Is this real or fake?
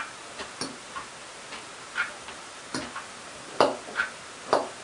real